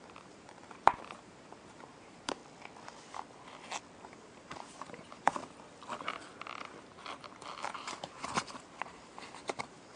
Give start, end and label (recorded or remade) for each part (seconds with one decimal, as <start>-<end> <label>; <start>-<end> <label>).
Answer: 0.0-2.4 remade; 2.4-4.0 recorded; 4.0-5.4 remade; 5.4-7.7 recorded; 7.7-10.0 remade